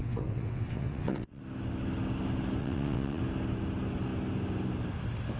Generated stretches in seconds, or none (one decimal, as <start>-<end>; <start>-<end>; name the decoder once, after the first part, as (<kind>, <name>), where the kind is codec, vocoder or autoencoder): 0.0-1.4 (vocoder, WaveNeXt); 2.6-3.2